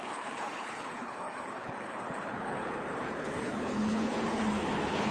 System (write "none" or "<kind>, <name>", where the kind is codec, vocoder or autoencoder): codec, HILCodec